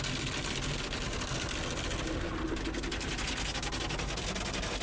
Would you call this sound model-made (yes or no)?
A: no